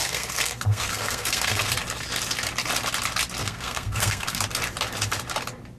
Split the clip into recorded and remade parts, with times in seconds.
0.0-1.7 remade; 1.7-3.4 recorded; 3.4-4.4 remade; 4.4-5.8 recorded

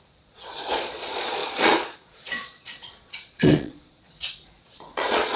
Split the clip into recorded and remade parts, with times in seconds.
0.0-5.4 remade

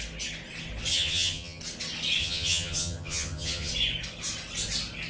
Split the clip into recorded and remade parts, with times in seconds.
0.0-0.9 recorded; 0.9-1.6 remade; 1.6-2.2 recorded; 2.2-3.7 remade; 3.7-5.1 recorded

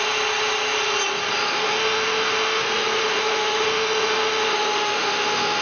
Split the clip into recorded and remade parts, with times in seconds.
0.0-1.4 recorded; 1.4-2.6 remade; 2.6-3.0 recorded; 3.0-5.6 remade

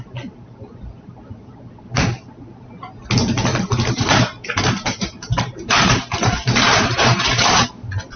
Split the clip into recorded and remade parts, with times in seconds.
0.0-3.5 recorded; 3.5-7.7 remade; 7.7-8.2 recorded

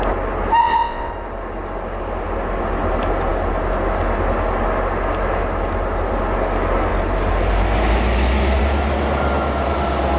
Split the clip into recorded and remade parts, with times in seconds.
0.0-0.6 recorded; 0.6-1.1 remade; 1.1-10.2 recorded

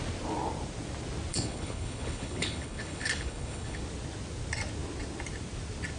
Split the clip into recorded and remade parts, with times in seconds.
0.0-1.3 recorded; 1.3-3.8 remade; 3.8-6.0 recorded